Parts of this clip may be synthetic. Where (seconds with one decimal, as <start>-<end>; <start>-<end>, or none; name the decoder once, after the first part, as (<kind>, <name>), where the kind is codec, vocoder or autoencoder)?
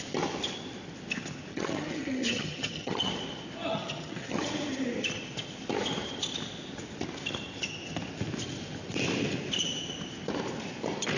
1.5-3.1 (vocoder, HiFi-GAN); 3.7-4.4